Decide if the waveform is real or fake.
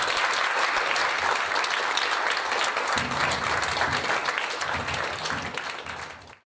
real